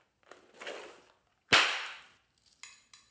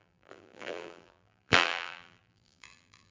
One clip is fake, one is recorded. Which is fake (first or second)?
second